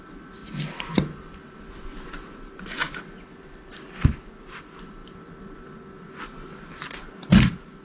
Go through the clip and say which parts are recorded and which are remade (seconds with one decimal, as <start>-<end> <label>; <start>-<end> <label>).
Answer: 0.0-7.8 recorded